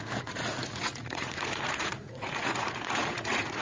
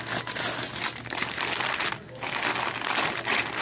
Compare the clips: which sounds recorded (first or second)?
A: second